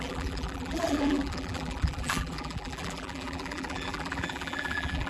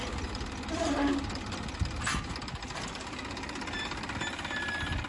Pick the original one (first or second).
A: second